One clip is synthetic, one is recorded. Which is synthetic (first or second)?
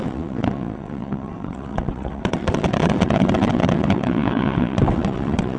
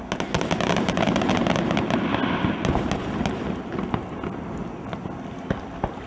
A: first